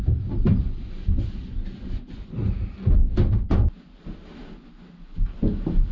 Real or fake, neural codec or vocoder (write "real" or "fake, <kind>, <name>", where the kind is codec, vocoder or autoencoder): real